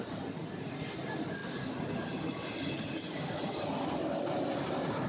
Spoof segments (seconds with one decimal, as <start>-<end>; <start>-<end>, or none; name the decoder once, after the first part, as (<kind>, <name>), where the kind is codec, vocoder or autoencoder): none